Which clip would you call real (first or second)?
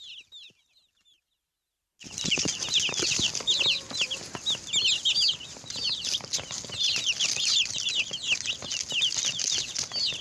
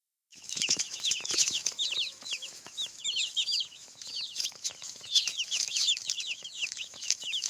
first